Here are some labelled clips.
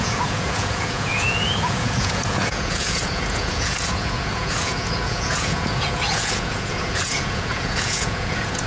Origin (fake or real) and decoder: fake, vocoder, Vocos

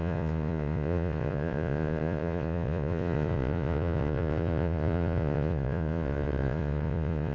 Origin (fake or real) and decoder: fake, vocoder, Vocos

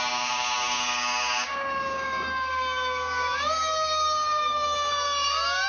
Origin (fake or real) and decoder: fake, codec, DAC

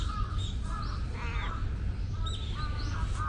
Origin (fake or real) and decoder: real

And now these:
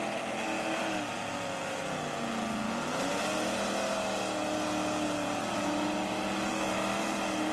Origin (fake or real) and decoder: real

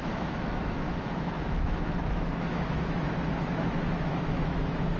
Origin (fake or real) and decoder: fake, autoencoder, DAC-VAE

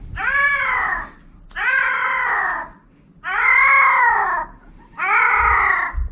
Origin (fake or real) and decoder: real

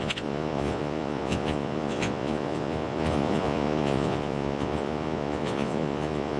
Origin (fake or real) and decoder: fake, vocoder, Vocos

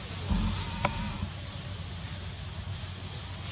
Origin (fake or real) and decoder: real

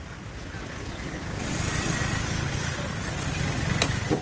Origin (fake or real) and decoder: real